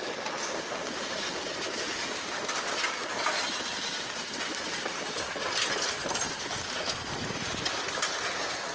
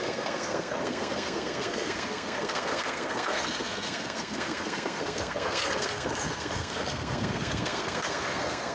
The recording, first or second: first